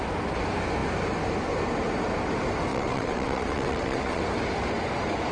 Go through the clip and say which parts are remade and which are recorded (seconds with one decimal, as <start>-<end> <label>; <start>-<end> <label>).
0.0-2.7 recorded; 2.7-4.2 remade; 4.2-5.3 recorded

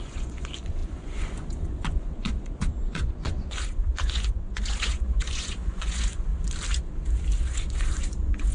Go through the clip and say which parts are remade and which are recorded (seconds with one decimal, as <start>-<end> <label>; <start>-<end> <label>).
0.0-6.3 remade; 6.3-7.4 recorded; 7.4-8.5 remade

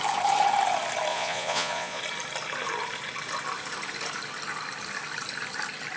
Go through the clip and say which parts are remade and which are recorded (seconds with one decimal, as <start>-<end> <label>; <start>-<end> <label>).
0.0-1.1 recorded; 1.1-2.0 remade; 2.0-6.0 recorded

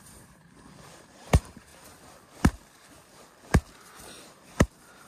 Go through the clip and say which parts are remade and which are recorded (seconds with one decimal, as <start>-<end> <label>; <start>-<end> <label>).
0.0-1.7 remade; 1.7-4.3 recorded; 4.3-5.1 remade

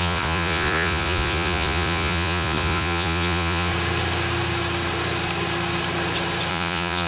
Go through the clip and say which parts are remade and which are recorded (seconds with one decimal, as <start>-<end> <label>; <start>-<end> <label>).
0.0-3.7 remade; 3.7-6.5 recorded; 6.5-7.1 remade

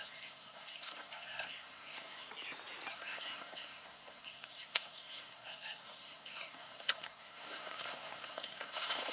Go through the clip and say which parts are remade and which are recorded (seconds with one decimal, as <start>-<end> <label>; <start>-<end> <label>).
0.0-2.3 remade; 2.3-2.9 recorded; 2.9-9.1 remade

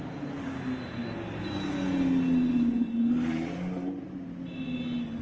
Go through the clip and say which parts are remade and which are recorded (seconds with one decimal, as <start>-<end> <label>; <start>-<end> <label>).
0.0-5.2 recorded

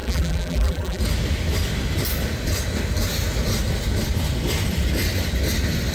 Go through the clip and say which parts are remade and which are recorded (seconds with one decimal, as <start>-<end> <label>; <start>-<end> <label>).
0.0-1.0 remade; 1.0-5.9 recorded